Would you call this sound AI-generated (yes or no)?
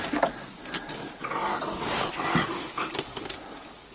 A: no